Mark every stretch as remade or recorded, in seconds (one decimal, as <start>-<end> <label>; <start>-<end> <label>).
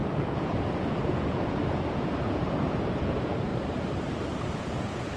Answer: 0.0-3.5 remade; 3.5-4.4 recorded; 4.4-5.2 remade